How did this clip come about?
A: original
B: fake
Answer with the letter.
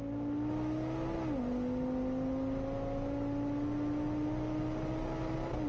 A